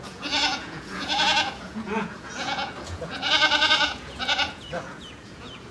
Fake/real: fake